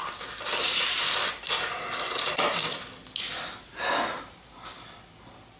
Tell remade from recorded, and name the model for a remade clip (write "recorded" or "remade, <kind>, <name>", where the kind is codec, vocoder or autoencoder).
recorded